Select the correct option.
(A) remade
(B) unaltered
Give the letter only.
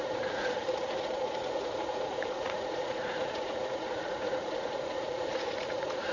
A